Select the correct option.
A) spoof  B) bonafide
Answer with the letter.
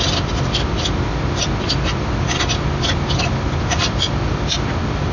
B